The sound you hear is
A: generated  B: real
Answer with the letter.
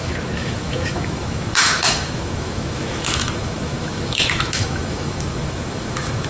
A